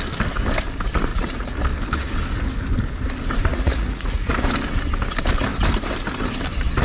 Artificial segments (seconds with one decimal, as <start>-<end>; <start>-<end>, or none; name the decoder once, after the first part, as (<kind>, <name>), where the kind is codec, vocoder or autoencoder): 1.1-1.6 (vocoder, Vocos); 3.5-4.3